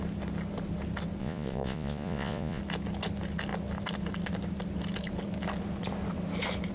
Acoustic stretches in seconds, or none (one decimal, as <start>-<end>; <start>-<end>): 0.0-1.2; 2.6-6.7